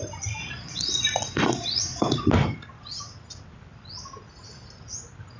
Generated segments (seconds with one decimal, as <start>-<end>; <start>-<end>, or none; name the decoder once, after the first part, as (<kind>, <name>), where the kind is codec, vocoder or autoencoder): 0.4-2.3 (vocoder, Vocos)